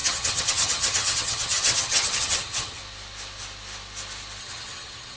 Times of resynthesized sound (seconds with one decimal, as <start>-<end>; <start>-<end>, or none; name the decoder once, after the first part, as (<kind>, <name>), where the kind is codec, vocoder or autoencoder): 0.0-2.8 (vocoder, HiFi-GAN); 4.4-5.2